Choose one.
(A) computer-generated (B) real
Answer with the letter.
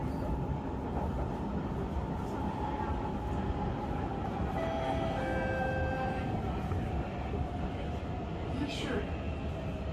B